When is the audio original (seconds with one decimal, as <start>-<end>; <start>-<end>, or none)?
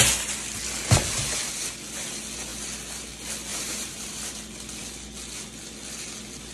0.0-3.5; 4.3-6.5